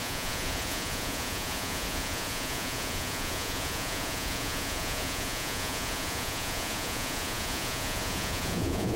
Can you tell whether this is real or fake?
fake